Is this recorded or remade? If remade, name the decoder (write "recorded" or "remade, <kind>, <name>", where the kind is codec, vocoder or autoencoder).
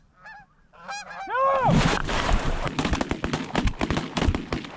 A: recorded